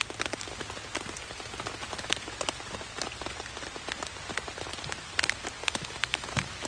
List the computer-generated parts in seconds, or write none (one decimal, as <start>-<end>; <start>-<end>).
5.6-6.7